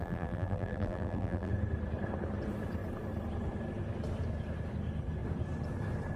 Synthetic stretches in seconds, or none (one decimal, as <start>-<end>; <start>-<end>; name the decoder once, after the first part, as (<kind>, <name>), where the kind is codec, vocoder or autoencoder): 0.0-1.5 (vocoder, BigVGAN v2)